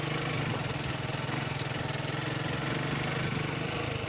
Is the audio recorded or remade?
recorded